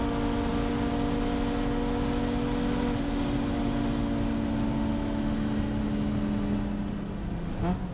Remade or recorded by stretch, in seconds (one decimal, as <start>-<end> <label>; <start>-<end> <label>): 0.0-7.9 recorded